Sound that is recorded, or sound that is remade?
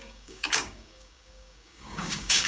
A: remade